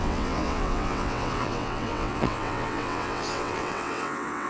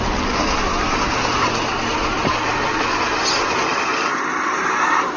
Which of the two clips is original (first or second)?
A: second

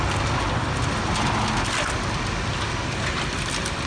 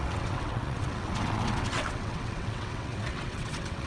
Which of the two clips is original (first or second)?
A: first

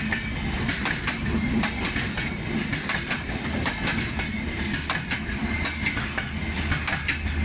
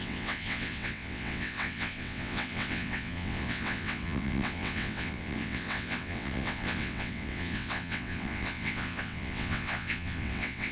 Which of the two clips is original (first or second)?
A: first